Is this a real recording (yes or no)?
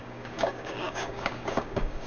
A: no